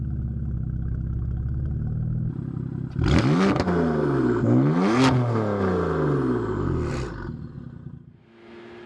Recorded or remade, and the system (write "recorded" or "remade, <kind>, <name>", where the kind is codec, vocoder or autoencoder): recorded